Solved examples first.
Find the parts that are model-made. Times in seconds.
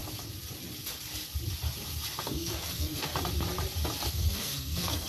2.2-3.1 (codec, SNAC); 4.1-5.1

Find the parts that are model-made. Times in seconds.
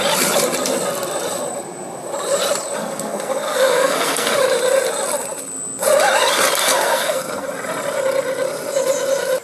2.8-4.3 (codec, SNAC); 6.6-7.5